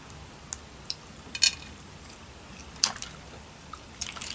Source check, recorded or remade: recorded